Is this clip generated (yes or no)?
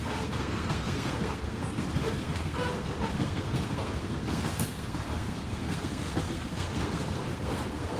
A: yes